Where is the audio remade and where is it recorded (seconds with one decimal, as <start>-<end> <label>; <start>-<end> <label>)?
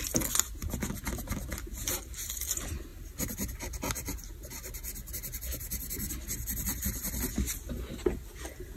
0.0-8.8 recorded